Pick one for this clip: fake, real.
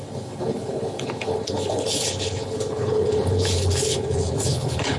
fake